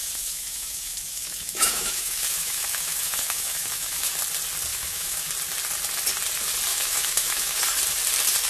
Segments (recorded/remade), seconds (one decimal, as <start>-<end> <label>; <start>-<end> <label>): 0.0-4.1 remade; 4.1-4.7 recorded; 4.7-5.3 remade; 5.3-6.7 recorded; 6.7-7.6 remade; 7.6-8.5 recorded